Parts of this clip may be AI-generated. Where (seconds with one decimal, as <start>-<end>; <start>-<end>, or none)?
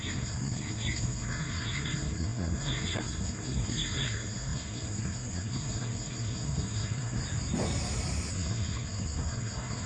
0.0-7.2; 8.3-9.9